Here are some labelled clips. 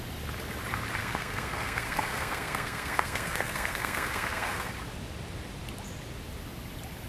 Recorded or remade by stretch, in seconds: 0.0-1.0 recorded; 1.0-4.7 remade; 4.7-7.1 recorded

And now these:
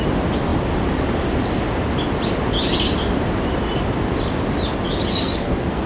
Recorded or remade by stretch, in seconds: 0.0-5.1 recorded; 5.1-5.9 remade

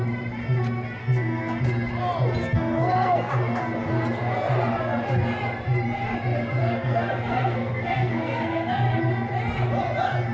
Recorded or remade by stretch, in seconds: 0.0-1.0 recorded; 1.0-1.6 remade; 1.6-2.4 recorded; 2.4-3.3 remade; 3.3-6.6 recorded; 6.6-9.0 remade; 9.0-10.3 recorded